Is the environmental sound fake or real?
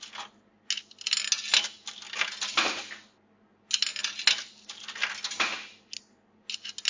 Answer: real